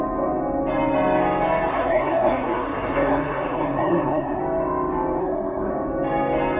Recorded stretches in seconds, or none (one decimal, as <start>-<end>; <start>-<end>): 0.0-1.7; 4.4-5.2; 5.7-6.6